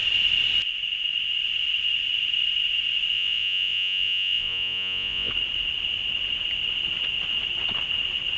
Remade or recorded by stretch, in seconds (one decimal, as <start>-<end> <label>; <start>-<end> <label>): 0.0-3.1 recorded; 3.1-5.3 remade; 5.3-8.4 recorded